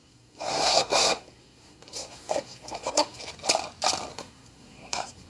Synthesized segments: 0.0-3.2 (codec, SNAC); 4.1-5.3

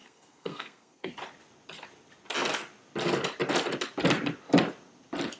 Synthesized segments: 0.0-1.1 (codec, SNAC)

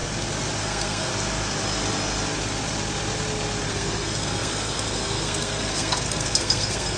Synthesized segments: 0.6-1.1 (codec, SNAC); 3.7-7.0